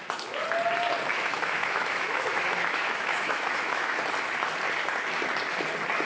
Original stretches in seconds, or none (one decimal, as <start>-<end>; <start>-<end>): 0.0-1.1; 4.0-6.0